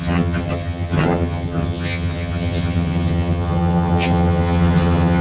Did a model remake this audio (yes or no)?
yes